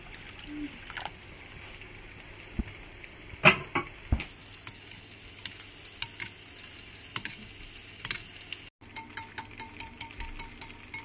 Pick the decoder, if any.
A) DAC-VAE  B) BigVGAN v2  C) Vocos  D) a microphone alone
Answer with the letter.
D